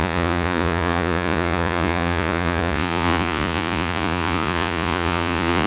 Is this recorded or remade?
remade